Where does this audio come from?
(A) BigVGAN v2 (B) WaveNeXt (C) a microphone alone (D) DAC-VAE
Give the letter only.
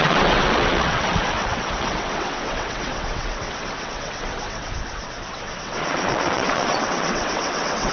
B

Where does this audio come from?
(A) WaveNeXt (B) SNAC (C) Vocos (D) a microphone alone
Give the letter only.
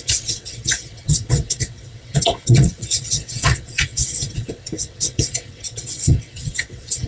A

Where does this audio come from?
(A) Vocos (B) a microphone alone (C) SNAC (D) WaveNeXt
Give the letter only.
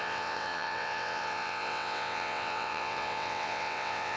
D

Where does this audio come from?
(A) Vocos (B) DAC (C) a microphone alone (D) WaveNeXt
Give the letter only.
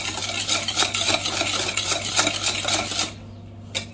C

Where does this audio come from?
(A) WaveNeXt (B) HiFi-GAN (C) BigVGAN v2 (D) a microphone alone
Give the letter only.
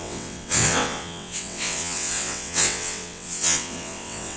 A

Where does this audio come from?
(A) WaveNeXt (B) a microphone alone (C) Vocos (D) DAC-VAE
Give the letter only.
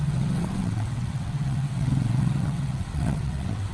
A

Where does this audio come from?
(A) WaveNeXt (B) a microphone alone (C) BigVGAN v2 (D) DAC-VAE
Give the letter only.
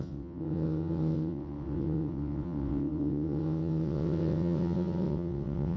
A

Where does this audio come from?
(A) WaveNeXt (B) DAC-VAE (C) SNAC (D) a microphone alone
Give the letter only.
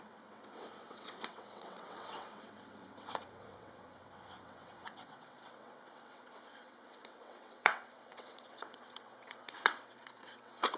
A